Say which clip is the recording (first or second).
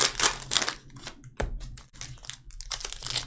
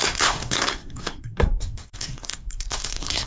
first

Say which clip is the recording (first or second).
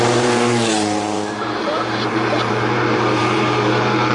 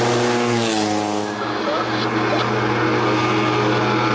second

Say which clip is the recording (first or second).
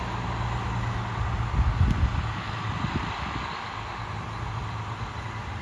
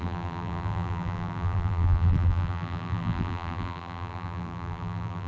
first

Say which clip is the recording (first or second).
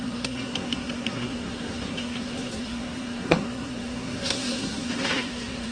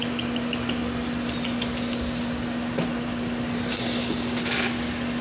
second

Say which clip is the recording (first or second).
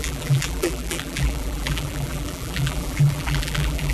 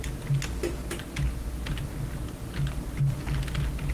second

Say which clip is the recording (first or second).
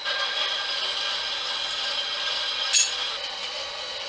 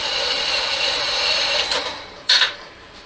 first